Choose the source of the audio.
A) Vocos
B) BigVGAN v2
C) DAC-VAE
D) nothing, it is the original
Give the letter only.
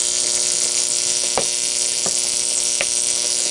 D